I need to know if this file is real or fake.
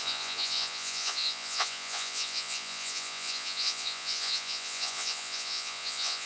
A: fake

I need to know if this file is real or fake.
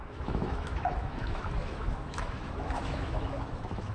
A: fake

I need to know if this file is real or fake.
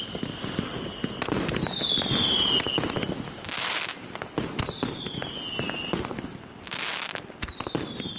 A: real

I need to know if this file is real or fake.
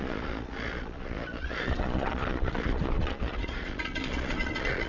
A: fake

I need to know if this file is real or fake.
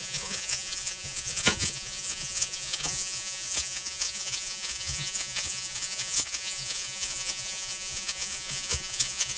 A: fake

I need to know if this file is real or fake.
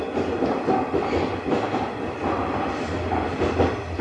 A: real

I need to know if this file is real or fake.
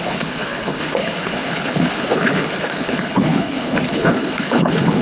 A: fake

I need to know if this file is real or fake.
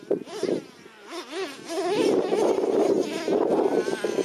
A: real